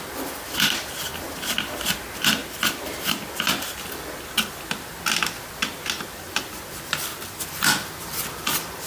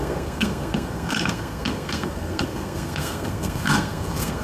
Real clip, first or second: first